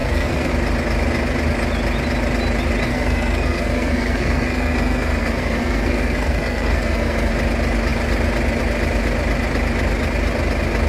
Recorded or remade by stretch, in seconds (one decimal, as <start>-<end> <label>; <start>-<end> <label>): 0.0-0.5 remade; 0.5-2.9 recorded; 2.9-7.3 remade; 7.3-10.9 recorded